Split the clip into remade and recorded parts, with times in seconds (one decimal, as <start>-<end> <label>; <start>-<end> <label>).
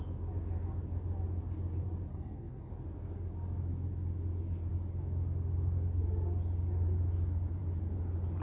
0.0-2.1 recorded; 2.1-2.7 remade; 2.7-8.4 recorded